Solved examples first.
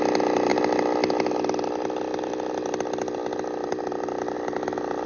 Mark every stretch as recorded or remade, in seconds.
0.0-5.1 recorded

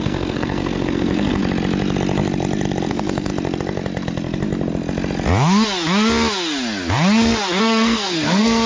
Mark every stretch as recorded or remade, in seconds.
0.0-1.4 remade; 1.4-2.9 recorded; 2.9-3.3 remade; 3.3-7.6 recorded; 7.6-8.7 remade

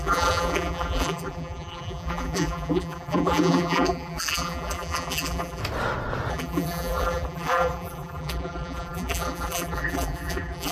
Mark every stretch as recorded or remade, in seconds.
0.0-5.6 remade; 5.6-6.3 recorded; 6.3-10.7 remade

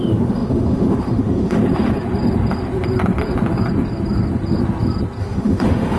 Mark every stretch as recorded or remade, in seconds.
0.0-1.6 remade; 1.6-5.2 recorded; 5.2-6.0 remade

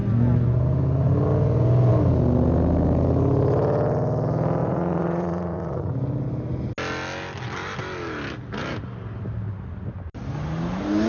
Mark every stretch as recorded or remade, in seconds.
0.0-4.6 recorded; 4.6-5.9 remade; 5.9-11.1 recorded

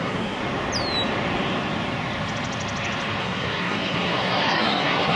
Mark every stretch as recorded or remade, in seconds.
0.0-0.4 remade; 0.4-3.2 recorded; 3.2-5.2 remade

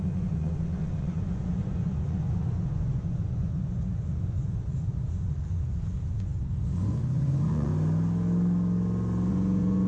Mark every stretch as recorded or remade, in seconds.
0.0-6.3 remade; 6.3-6.9 recorded; 6.9-7.7 remade; 7.7-9.3 recorded; 9.3-9.9 remade

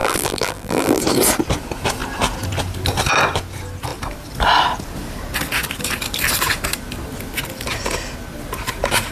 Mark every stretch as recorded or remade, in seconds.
0.0-1.0 remade; 1.0-9.1 recorded